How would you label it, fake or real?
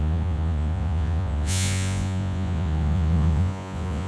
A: fake